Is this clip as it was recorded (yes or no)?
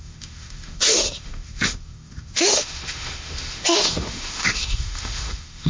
no